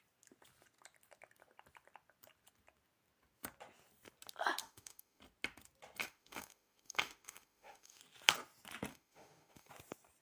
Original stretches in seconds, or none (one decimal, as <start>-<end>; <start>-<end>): 0.0-4.6; 5.2-6.0; 8.0-8.9; 9.7-10.2